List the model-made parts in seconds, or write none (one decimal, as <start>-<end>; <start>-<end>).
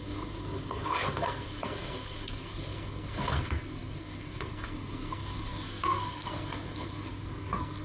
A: 0.0-7.8